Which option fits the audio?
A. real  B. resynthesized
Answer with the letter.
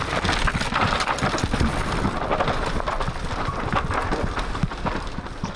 A